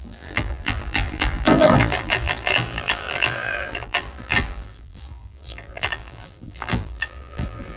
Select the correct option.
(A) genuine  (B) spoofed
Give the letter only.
B